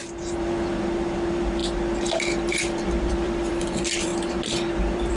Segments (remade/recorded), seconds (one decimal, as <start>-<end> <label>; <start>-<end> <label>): 0.0-1.6 remade; 1.6-2.6 recorded; 2.6-4.1 remade; 4.1-4.8 recorded; 4.8-5.2 remade